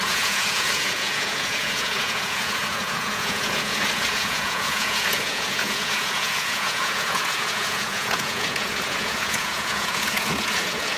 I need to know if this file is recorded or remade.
remade